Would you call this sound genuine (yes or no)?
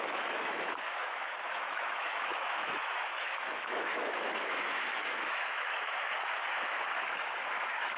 no